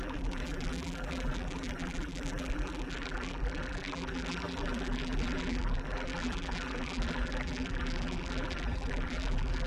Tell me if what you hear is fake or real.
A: fake